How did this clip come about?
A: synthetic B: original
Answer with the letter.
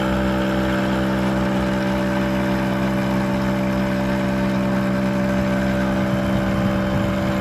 B